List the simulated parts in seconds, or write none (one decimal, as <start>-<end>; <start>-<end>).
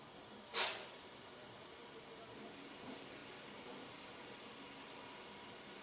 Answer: none